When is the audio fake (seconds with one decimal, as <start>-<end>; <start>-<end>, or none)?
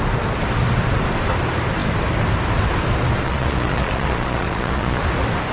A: 3.2-5.0